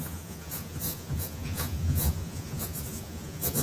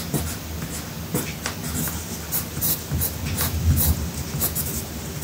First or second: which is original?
second